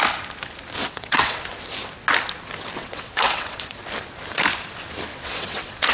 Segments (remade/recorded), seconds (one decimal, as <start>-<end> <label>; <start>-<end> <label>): 0.0-0.8 recorded; 0.8-1.5 remade; 1.5-2.8 recorded; 2.8-3.8 remade; 3.8-5.1 recorded; 5.1-5.9 remade

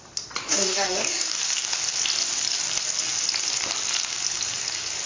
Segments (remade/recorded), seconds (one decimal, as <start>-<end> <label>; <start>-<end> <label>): 0.0-0.4 recorded; 0.4-1.4 remade; 1.4-5.1 recorded

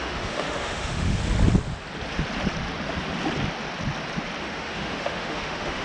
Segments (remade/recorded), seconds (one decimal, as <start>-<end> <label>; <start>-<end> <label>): 0.0-1.2 remade; 1.2-4.4 recorded; 4.4-5.8 remade